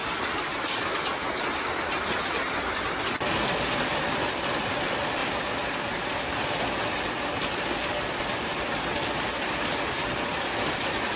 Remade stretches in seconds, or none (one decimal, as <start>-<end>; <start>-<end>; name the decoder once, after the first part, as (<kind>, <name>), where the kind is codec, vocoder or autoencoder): 0.0-0.6 (vocoder, BigVGAN v2); 5.2-6.6